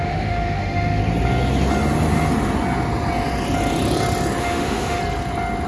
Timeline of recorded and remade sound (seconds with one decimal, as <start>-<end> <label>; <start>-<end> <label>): 0.0-1.0 remade; 1.0-4.4 recorded; 4.4-5.0 remade; 5.0-5.7 recorded